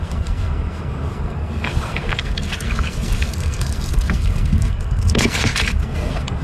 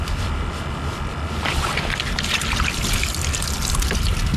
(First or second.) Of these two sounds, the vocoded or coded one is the first